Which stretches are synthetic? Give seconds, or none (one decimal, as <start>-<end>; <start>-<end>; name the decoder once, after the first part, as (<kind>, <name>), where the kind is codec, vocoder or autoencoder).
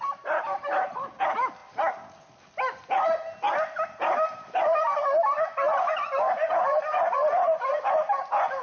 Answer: none